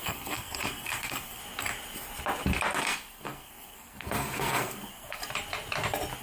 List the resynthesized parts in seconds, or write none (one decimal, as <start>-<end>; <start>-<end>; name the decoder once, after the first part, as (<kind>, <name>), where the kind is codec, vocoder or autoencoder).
0.0-1.4 (codec, SNAC); 2.8-5.2